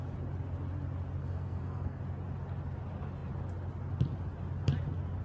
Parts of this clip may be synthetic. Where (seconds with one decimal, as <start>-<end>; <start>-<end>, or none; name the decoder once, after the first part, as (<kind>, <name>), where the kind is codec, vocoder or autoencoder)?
1.2-2.0 (codec, SNAC)